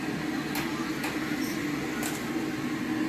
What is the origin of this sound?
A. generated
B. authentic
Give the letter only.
B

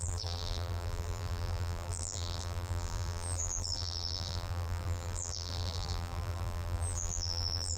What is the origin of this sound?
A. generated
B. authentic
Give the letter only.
A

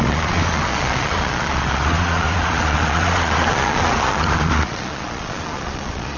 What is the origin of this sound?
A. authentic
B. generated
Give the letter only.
B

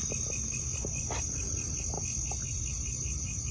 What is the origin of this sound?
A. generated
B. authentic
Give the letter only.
B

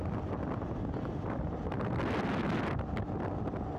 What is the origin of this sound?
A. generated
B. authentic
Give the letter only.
B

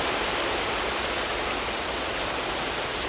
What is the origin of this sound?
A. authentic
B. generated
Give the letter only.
A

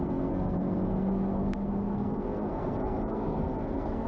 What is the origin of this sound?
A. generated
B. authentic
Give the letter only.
A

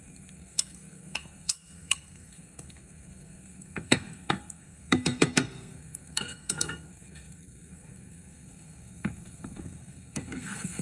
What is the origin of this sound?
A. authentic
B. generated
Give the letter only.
B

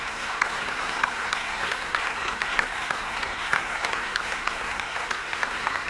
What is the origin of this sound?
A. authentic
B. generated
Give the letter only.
B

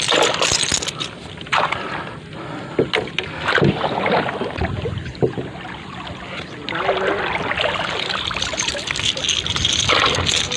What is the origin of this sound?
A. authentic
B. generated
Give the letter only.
A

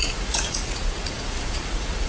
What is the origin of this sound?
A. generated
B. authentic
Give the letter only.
A